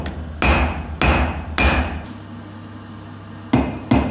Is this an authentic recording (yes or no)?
yes